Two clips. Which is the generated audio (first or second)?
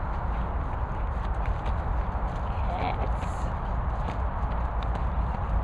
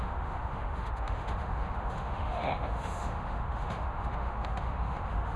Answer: second